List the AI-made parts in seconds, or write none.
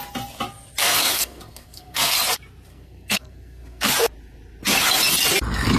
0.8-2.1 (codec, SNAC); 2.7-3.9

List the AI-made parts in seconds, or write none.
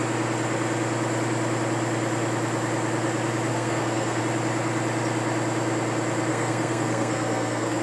3.5-4.2 (codec, SNAC); 6.3-7.8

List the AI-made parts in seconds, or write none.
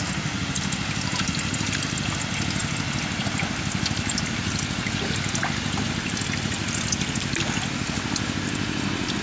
none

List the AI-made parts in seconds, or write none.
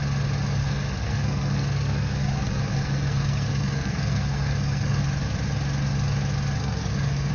0.6-5.0 (codec, SNAC); 6.6-7.3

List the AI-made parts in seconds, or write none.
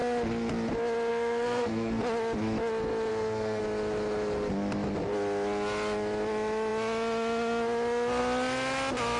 1.1-2.0 (codec, SNAC); 3.1-3.6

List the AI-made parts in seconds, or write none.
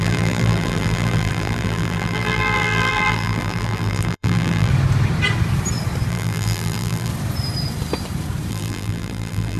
0.0-4.7 (vocoder, BigVGAN v2); 6.1-7.1; 8.5-9.6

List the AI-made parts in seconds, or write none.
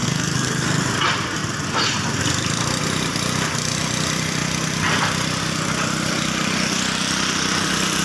0.0-0.8 (codec, SNAC)